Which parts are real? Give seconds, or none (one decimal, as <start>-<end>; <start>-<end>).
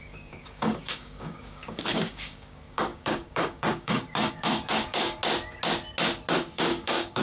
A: 5.2-6.3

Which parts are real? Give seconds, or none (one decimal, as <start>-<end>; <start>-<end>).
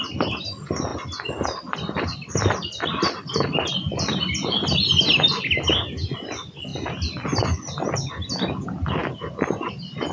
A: 0.0-10.1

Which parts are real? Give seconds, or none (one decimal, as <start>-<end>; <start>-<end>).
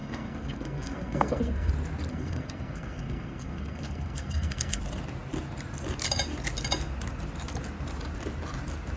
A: 1.7-2.1; 4.8-9.0